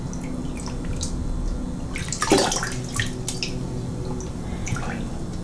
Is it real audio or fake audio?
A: real